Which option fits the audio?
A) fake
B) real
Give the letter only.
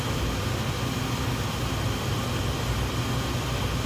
B